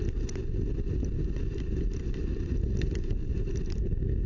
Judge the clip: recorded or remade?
recorded